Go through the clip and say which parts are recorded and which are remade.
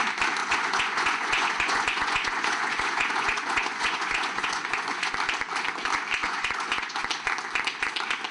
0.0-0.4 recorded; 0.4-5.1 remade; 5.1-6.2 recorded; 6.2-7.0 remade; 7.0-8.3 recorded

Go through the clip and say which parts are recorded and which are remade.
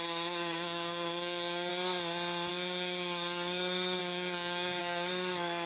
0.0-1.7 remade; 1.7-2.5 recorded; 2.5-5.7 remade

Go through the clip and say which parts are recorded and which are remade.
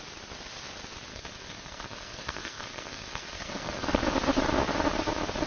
0.0-1.1 recorded; 1.1-4.0 remade; 4.0-5.5 recorded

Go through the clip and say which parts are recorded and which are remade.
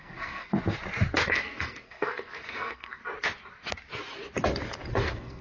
0.0-0.5 remade; 0.5-1.3 recorded; 1.3-3.0 remade; 3.0-4.9 recorded; 4.9-5.4 remade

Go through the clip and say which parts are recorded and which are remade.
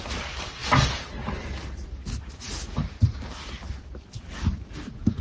0.0-5.2 recorded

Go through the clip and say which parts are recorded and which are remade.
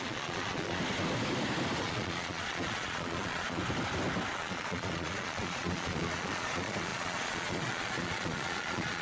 0.0-0.8 remade; 0.8-1.8 recorded; 1.8-3.6 remade; 3.6-4.3 recorded; 4.3-9.0 remade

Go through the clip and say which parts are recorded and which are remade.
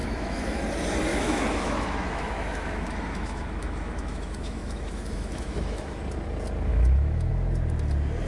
0.0-0.6 remade; 0.6-1.1 recorded; 1.1-6.0 remade; 6.0-6.7 recorded; 6.7-7.3 remade; 7.3-8.3 recorded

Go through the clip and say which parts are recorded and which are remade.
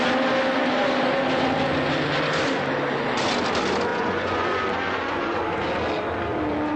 0.0-3.9 recorded; 3.9-5.4 remade; 5.4-6.8 recorded